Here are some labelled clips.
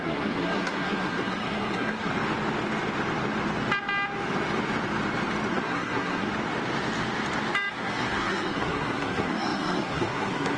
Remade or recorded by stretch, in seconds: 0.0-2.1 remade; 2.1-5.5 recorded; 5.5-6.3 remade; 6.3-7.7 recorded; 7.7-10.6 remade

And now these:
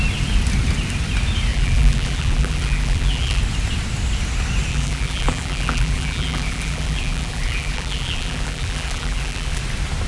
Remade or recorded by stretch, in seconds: 0.0-1.5 recorded; 1.5-3.4 remade; 3.4-4.7 recorded; 4.7-9.6 remade; 9.6-10.1 recorded